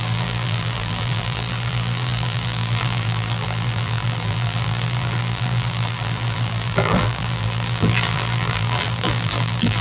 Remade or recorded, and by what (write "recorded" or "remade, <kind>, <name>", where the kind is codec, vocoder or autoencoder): remade, vocoder, BigVGAN v2